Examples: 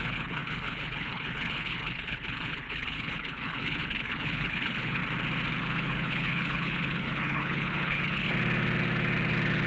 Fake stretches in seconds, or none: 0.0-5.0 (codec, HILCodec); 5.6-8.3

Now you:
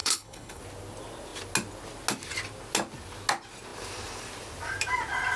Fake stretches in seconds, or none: 0.0-0.6 (codec, HILCodec)

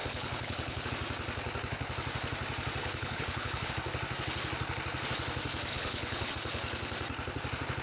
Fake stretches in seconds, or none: 0.0-0.9 (codec, HILCodec); 2.8-3.7; 5.7-6.3

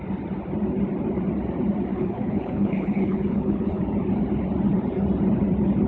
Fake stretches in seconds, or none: 1.9-3.8 (codec, HILCodec)

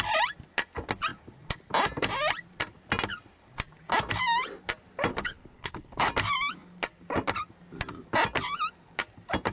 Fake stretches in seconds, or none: 5.1-6.1 (codec, HILCodec)

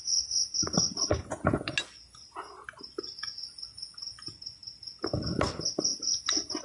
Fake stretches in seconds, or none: none